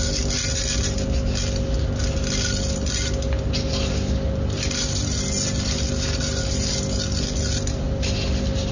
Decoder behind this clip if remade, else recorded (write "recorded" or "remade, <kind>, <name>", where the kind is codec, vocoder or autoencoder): recorded